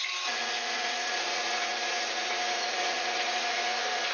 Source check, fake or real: fake